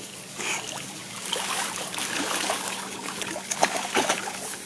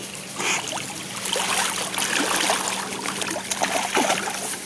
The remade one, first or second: first